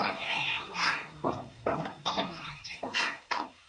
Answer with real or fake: fake